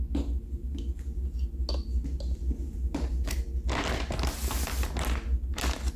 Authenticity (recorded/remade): recorded